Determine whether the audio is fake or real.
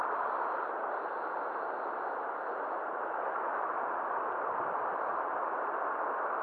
real